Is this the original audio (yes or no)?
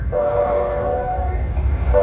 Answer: no